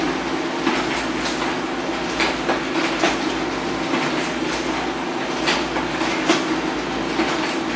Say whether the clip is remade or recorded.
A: recorded